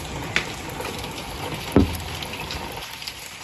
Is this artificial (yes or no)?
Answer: no